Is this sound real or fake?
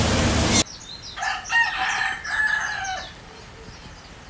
real